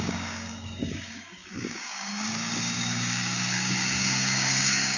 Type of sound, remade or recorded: remade